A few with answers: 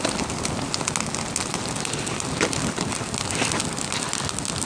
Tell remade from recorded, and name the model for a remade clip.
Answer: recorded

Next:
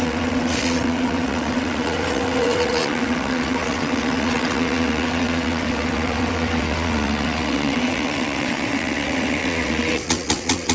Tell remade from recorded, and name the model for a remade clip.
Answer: remade, vocoder, WaveNeXt